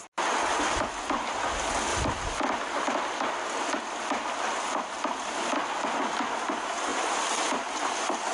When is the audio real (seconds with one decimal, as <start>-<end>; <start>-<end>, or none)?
0.0-1.9; 6.0-8.3